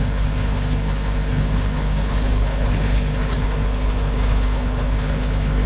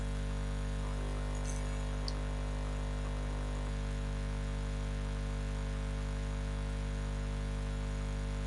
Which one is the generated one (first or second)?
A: first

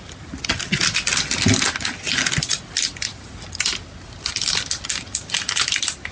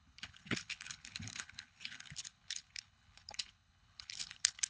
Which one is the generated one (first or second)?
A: second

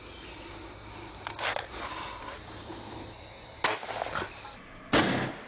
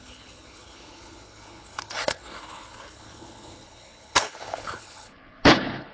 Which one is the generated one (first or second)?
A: second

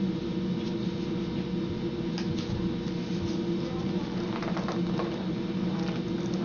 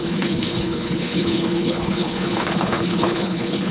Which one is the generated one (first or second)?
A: second